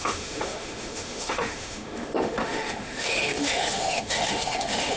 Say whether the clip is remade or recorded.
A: remade